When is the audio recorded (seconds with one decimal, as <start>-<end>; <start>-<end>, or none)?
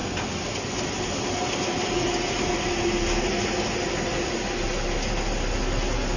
0.0-6.2